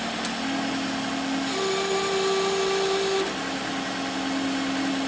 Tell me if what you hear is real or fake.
real